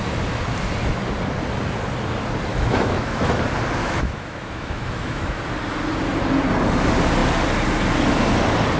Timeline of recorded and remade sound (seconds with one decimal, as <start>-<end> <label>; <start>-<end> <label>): 0.0-2.5 recorded; 2.5-3.4 remade; 3.4-3.8 recorded; 3.8-5.4 remade; 5.4-8.8 recorded